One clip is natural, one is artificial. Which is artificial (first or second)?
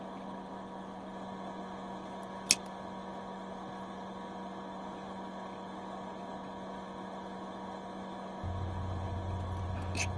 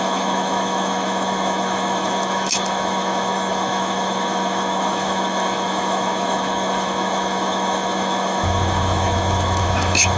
second